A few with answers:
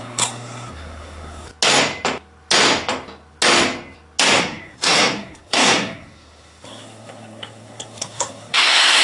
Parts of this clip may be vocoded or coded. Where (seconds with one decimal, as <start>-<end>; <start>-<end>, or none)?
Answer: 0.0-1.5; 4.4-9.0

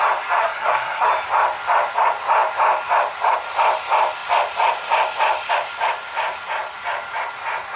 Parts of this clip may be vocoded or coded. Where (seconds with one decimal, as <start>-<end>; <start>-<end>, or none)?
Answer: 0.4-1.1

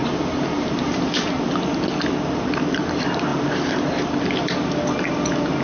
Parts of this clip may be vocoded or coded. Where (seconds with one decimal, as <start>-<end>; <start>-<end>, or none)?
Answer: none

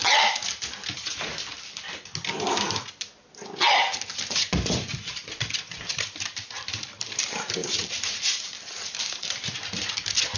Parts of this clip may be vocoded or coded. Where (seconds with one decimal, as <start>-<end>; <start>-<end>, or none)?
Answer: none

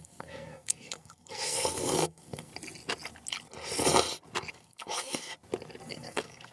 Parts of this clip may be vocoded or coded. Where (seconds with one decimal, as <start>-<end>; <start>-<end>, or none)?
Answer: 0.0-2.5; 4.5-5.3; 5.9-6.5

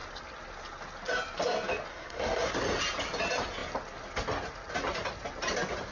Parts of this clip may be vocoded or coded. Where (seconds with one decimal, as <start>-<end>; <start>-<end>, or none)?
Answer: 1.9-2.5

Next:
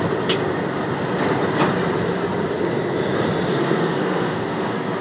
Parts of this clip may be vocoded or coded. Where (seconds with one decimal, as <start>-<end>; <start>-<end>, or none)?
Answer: 3.5-5.0

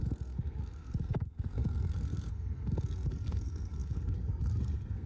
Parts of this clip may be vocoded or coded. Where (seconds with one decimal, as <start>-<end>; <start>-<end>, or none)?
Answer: 0.0-5.1